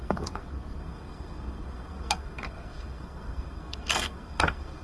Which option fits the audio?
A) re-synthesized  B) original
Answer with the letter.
A